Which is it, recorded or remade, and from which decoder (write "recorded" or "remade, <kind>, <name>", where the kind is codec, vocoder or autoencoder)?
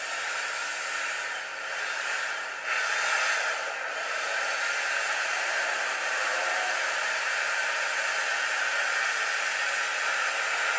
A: recorded